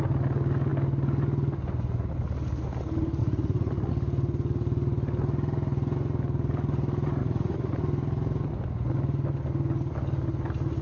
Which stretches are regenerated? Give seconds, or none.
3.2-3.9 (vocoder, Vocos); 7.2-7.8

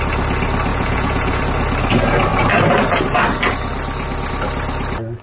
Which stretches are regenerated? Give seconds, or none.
0.7-1.4 (vocoder, Vocos)

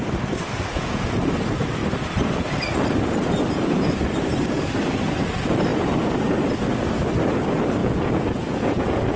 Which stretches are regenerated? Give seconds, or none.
0.7-1.2 (vocoder, Vocos); 7.8-9.2

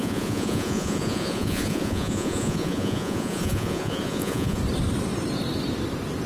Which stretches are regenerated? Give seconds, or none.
0.0-4.6 (vocoder, Vocos)

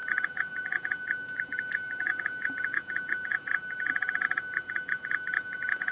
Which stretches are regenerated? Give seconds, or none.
0.0-3.5 (vocoder, Vocos)

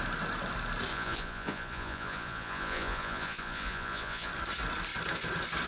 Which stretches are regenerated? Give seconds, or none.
0.9-4.3 (vocoder, Vocos)

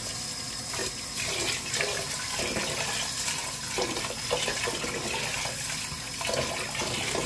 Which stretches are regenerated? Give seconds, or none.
none

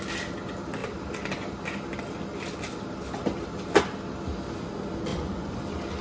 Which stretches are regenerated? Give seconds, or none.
5.1-5.6 (vocoder, Vocos)